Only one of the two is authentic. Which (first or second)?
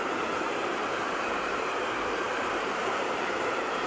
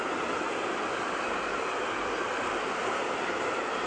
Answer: second